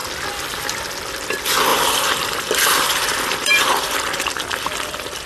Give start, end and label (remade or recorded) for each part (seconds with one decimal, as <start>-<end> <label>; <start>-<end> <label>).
0.0-1.7 recorded; 1.7-5.3 remade